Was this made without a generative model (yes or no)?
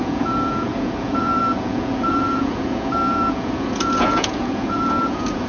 no